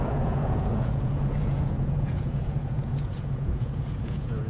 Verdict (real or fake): fake